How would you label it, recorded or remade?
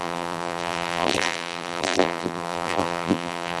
remade